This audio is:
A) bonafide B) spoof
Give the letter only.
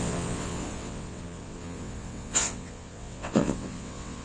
B